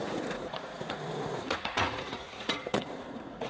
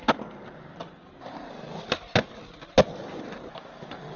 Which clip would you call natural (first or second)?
second